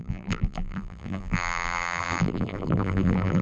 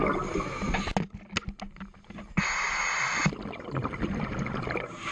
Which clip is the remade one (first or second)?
first